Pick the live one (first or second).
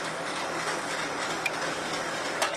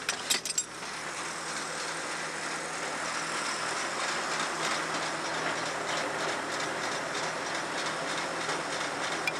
second